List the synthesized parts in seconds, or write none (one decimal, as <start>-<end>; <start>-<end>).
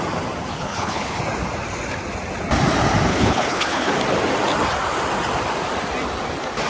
0.5-1.2; 3.1-3.9